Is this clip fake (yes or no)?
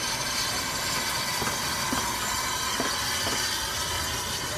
no